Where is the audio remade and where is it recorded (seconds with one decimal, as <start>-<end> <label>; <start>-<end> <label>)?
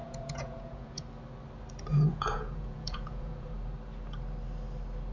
0.0-1.0 remade; 1.0-1.9 recorded; 1.9-3.5 remade; 3.5-5.1 recorded